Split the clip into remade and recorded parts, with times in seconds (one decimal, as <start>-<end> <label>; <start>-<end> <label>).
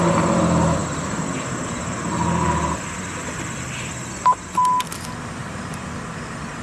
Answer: 0.0-5.4 recorded; 5.4-5.9 remade; 5.9-6.6 recorded